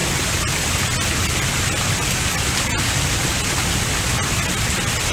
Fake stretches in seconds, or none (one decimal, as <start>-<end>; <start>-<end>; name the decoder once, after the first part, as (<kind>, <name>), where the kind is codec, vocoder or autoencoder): none